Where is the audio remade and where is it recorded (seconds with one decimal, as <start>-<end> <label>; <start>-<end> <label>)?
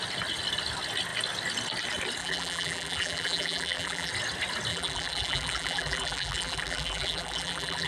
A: 0.0-2.2 recorded; 2.2-4.1 remade; 4.1-4.7 recorded; 4.7-7.9 remade